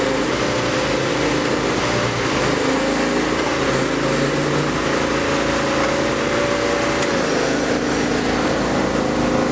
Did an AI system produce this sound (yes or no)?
no